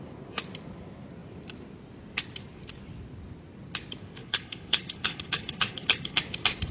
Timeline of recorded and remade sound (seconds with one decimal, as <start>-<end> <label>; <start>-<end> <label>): 0.0-4.2 recorded; 4.2-6.2 remade; 6.2-6.7 recorded